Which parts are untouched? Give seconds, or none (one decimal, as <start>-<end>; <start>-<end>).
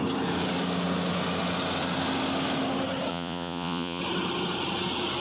0.0-3.1; 4.0-5.2